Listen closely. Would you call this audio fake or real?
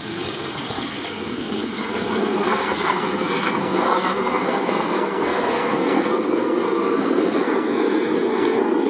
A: fake